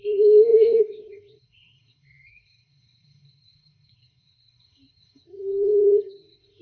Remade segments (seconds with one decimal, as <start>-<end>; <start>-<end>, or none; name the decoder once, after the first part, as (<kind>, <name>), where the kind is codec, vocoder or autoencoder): 0.0-6.6 (codec, SNAC)